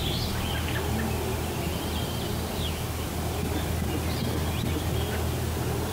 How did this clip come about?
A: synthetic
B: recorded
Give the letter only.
B